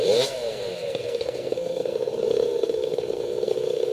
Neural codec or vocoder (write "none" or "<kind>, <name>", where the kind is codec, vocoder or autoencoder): codec, SNAC